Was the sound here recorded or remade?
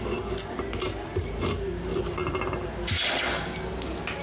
recorded